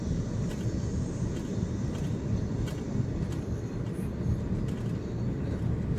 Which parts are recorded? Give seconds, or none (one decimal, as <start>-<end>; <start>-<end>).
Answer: 0.0-1.5; 5.1-6.0